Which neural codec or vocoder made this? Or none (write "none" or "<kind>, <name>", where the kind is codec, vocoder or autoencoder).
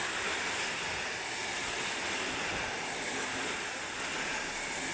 none